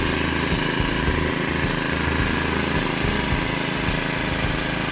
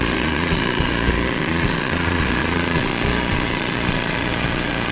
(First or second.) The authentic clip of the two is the first